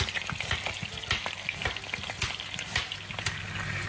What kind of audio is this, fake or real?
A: real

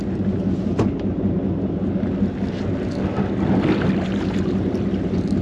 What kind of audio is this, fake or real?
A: real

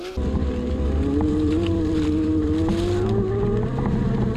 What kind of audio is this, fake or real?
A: real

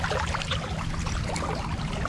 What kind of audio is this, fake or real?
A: real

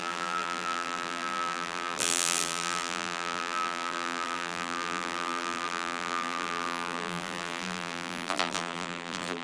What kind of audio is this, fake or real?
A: fake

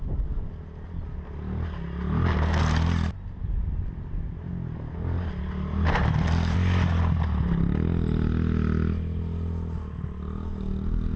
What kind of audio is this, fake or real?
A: real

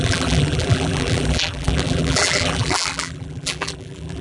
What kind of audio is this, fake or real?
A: fake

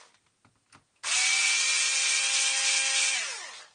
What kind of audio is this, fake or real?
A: real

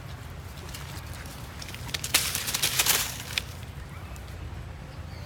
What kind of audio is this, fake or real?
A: real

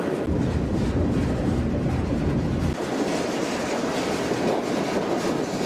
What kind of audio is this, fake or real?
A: real